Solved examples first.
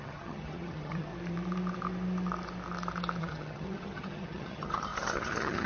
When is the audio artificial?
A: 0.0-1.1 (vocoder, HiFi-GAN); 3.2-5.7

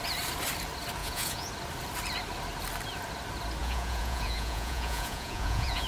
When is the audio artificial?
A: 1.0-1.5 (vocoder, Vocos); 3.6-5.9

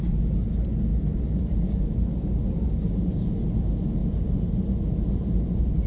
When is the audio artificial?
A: 0.9-3.1 (vocoder, BigVGAN v2); 4.0-5.9

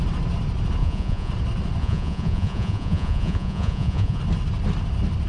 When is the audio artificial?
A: 0.8-1.3 (vocoder, Vocos); 1.8-4.2

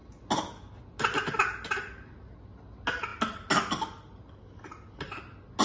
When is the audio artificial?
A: none

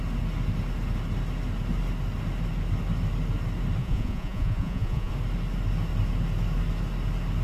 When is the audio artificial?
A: 3.8-5.1 (vocoder, Vocos)

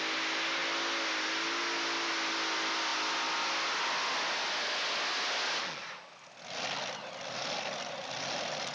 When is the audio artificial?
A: none

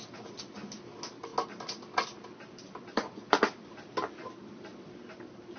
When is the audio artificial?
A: none